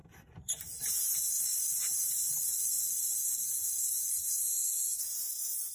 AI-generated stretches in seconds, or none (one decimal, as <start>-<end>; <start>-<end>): 0.0-1.4; 1.9-5.3